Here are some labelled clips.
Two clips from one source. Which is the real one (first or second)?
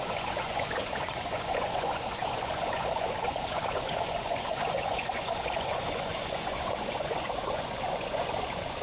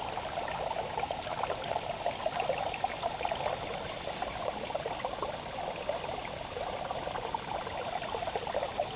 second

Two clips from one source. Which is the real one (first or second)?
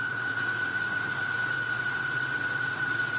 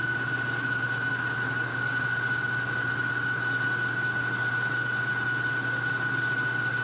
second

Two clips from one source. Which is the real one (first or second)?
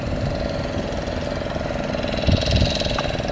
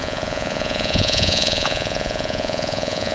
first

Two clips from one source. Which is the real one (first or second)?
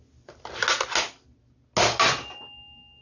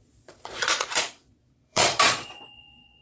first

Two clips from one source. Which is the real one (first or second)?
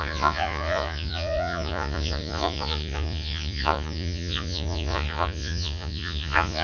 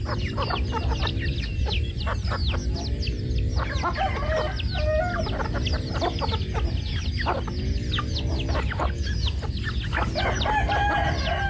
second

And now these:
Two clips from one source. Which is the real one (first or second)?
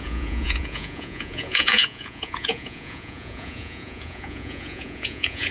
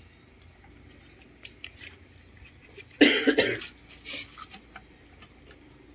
second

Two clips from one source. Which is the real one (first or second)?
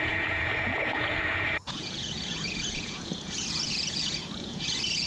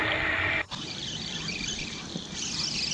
second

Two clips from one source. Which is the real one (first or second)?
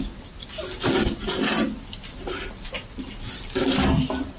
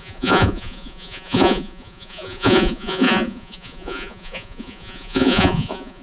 first